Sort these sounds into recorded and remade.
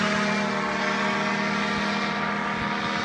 recorded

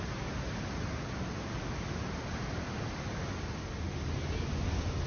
recorded